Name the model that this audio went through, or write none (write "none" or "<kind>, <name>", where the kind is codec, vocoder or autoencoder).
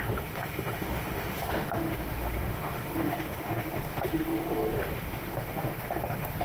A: autoencoder, DAC-VAE